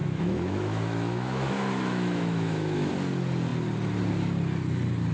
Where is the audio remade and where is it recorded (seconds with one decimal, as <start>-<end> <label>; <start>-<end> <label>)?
0.0-2.9 remade; 2.9-5.1 recorded